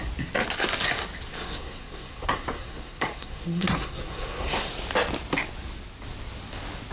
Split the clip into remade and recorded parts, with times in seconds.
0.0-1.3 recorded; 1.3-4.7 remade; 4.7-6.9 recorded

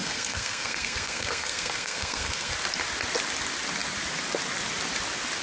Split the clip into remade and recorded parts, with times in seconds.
0.0-2.5 remade; 2.5-5.4 recorded

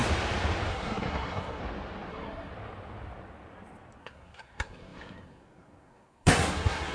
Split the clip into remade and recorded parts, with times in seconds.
0.0-0.7 recorded; 0.7-1.6 remade; 1.6-2.1 recorded; 2.1-2.5 remade; 2.5-4.0 recorded; 4.0-6.9 remade